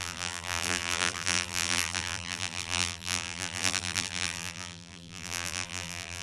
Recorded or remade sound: remade